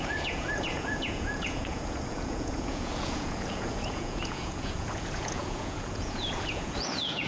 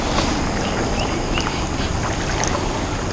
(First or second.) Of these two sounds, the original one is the second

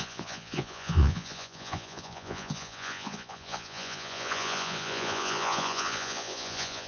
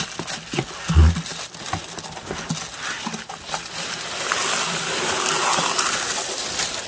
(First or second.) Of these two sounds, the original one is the second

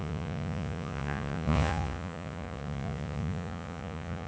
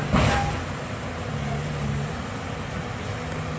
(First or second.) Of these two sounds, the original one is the second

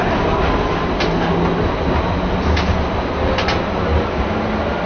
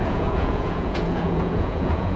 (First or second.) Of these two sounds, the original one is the first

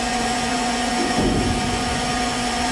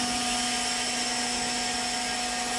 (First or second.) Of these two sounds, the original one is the second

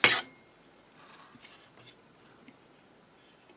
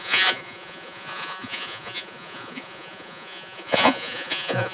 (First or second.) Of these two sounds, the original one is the first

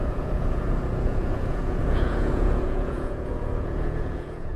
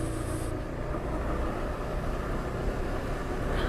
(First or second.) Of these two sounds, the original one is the second